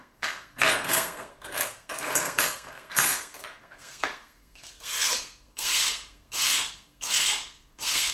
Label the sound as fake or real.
fake